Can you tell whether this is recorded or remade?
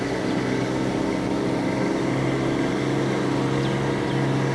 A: recorded